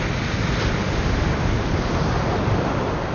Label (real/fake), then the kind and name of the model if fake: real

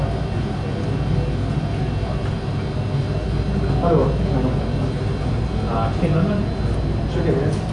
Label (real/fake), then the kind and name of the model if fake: real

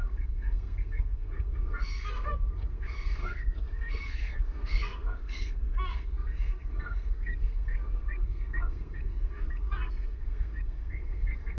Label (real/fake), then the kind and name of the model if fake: fake, codec, SNAC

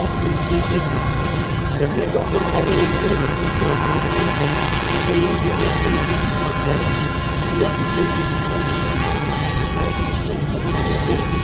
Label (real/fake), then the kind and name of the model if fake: fake, vocoder, HiFi-GAN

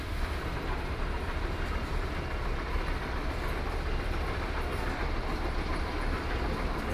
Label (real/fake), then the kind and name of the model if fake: fake, vocoder, BigVGAN v2